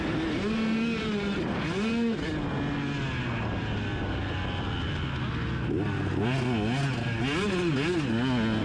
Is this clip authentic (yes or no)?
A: yes